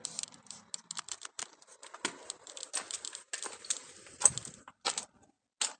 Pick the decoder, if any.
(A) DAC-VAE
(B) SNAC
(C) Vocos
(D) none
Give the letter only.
D